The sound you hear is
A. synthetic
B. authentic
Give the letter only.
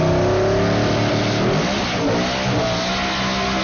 B